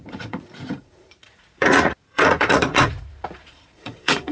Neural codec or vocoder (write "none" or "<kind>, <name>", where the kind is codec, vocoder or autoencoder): vocoder, Vocos